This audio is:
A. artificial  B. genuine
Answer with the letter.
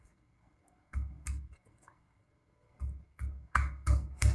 A